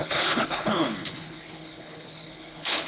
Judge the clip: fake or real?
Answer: fake